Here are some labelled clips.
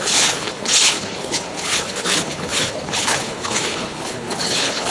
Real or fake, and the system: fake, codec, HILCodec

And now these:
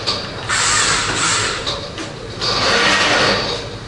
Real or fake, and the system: real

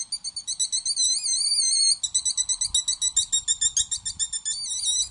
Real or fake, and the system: real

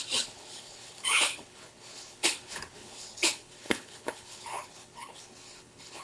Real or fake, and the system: fake, codec, HILCodec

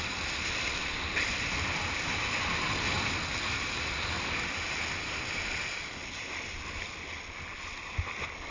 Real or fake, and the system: real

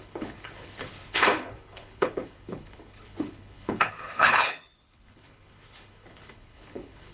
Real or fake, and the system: fake, codec, HILCodec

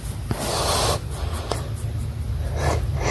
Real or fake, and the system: real